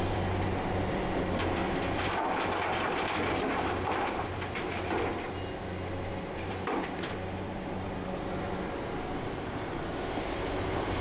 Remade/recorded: remade